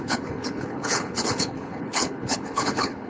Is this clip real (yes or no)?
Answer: no